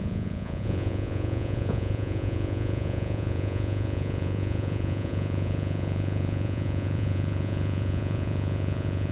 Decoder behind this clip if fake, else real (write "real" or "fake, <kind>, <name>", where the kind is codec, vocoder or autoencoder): fake, vocoder, Vocos